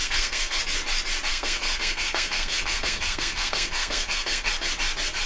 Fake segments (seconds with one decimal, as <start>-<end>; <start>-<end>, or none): 0.0-0.6; 1.3-4.5